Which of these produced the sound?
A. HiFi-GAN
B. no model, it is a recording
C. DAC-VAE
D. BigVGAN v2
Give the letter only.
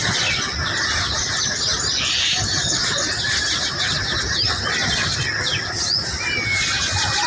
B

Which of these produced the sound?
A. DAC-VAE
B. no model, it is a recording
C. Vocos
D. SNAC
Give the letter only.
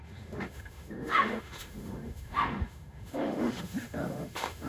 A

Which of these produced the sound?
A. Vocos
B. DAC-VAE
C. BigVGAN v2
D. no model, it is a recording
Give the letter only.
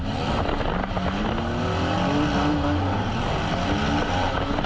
D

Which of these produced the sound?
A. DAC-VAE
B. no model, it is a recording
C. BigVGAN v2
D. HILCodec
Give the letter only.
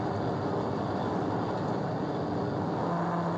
B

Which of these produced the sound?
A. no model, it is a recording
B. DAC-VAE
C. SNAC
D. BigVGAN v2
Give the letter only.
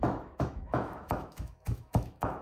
B